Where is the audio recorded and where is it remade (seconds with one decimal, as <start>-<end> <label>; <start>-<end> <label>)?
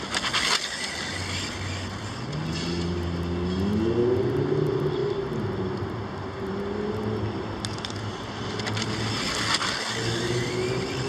0.0-11.1 recorded